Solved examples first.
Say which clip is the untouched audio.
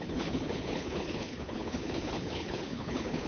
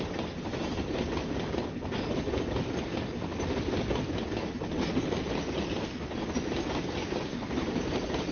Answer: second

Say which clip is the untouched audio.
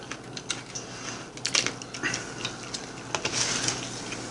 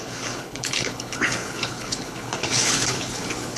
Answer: first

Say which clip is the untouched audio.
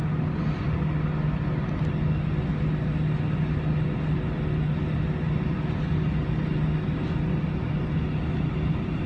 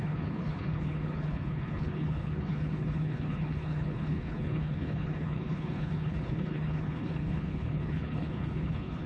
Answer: first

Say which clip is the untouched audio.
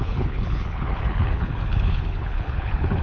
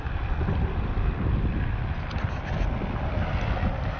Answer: second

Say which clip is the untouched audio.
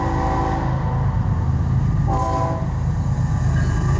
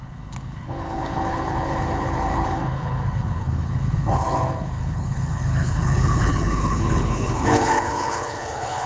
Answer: first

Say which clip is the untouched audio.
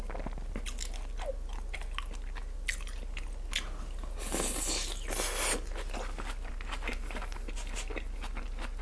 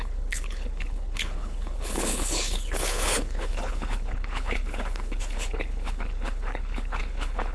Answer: first